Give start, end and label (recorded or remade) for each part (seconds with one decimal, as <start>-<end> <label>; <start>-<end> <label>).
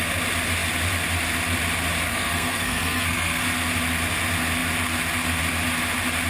0.0-2.1 recorded; 2.1-3.4 remade; 3.4-6.3 recorded